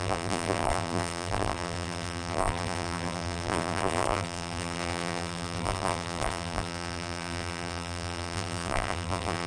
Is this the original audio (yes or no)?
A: no